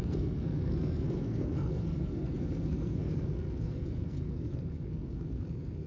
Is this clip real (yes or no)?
no